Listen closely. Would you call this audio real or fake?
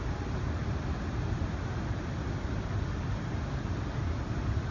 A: real